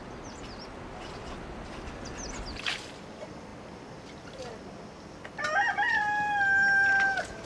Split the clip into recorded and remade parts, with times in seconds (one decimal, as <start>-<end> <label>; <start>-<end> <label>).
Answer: 0.0-7.5 recorded